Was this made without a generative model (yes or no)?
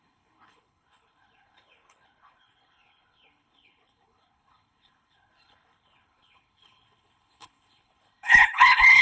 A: no